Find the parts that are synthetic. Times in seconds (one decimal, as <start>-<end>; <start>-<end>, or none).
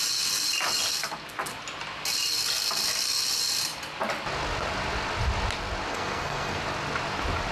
5.9-6.6